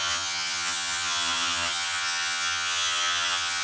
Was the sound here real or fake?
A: fake